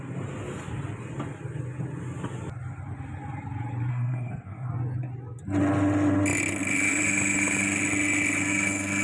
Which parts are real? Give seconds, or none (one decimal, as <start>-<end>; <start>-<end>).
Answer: 0.0-3.9; 4.7-9.0